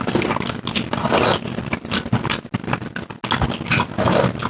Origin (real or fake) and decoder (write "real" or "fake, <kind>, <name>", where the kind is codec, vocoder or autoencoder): real